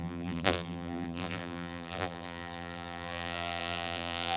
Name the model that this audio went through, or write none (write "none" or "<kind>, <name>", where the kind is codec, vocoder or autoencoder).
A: vocoder, BigVGAN v2